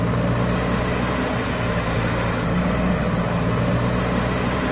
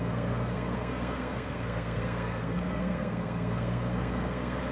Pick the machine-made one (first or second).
second